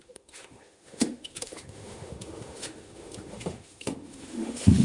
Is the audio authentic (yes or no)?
no